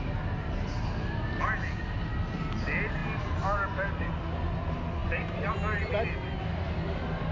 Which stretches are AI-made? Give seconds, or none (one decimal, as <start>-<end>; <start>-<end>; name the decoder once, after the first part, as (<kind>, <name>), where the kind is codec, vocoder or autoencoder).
none